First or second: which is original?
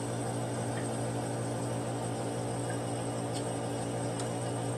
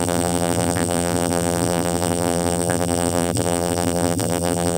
first